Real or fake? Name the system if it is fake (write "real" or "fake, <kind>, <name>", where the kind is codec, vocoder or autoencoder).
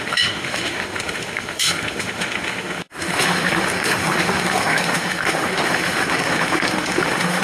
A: fake, autoencoder, DAC-VAE